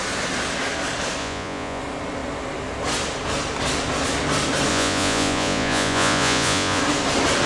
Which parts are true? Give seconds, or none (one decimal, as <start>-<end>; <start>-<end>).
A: 0.0-1.2; 1.8-4.7; 6.8-7.5